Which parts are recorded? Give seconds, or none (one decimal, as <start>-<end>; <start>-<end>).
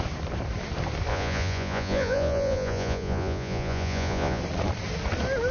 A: 0.0-1.1; 4.4-5.5